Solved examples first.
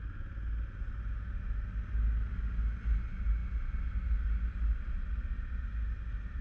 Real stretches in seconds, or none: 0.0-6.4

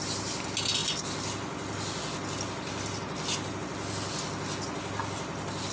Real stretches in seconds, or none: 0.0-5.7

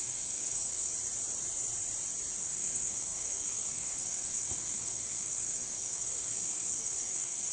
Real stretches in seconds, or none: 0.9-2.4

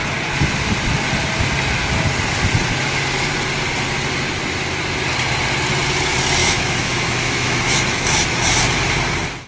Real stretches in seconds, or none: 0.0-6.4; 8.5-9.5

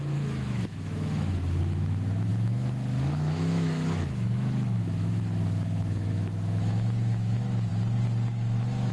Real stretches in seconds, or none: 7.7-8.9

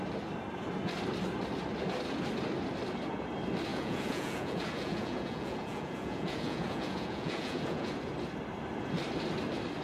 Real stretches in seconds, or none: 0.0-3.7; 7.9-9.8

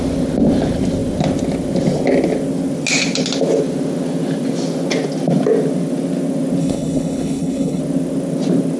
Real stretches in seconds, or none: 0.0-6.6; 7.8-8.8